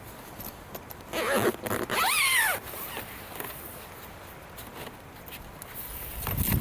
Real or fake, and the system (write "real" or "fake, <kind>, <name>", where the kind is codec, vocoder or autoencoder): real